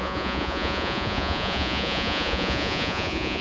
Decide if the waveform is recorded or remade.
remade